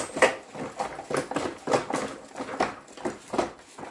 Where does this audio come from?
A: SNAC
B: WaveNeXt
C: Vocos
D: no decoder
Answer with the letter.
D